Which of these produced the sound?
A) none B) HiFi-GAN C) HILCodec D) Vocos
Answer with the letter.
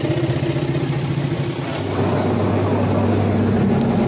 A